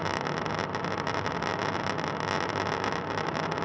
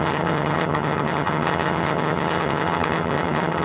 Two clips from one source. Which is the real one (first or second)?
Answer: first